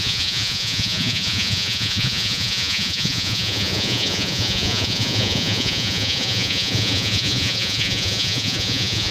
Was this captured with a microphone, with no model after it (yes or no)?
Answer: no